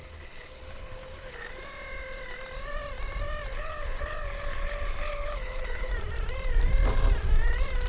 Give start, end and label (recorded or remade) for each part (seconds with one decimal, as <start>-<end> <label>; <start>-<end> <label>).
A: 0.0-1.5 remade; 1.5-3.5 recorded; 3.5-5.9 remade; 5.9-7.9 recorded

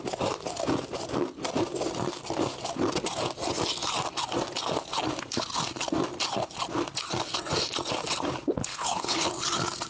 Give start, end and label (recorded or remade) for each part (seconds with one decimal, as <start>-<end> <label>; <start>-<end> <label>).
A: 0.0-8.7 recorded; 8.7-9.3 remade; 9.3-9.9 recorded

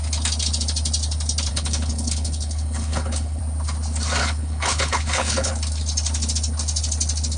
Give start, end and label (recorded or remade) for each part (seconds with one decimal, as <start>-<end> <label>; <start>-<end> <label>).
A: 0.0-1.5 recorded; 1.5-3.4 remade; 3.4-4.2 recorded; 4.2-5.5 remade; 5.5-7.4 recorded

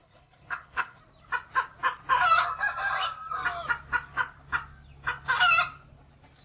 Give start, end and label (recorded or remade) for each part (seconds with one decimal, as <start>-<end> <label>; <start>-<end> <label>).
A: 0.0-1.0 remade; 1.0-6.4 recorded

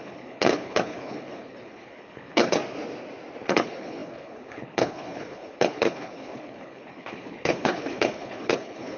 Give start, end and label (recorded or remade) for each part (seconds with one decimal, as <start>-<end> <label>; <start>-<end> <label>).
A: 0.0-2.6 remade; 2.6-3.5 recorded; 3.5-9.0 remade